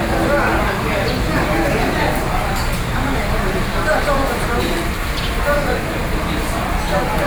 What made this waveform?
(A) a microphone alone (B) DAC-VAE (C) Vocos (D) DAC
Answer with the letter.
A